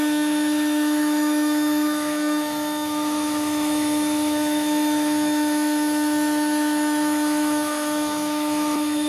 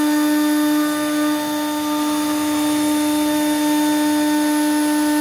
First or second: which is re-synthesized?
first